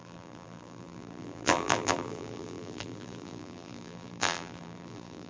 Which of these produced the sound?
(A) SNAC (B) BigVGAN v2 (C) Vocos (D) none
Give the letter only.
B